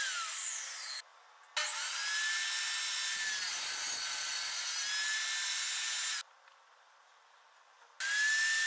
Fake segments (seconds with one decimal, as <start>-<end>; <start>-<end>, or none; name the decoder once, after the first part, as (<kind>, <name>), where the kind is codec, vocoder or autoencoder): none